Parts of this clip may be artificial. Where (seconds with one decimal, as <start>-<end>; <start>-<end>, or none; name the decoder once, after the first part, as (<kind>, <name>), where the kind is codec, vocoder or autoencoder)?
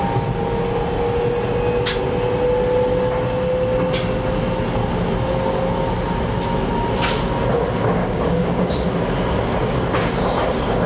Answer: 8.0-8.7 (codec, DAC)